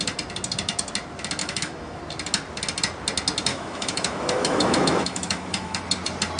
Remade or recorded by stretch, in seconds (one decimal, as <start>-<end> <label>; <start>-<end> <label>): 0.0-1.4 recorded; 1.4-2.0 remade; 2.0-3.5 recorded; 3.5-5.8 remade; 5.8-6.4 recorded